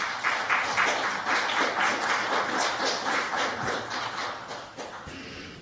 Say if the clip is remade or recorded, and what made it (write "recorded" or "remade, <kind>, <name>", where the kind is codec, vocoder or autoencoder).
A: remade, vocoder, BigVGAN v2